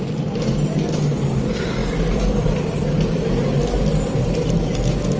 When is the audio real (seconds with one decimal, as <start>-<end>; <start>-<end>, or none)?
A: 0.0-5.2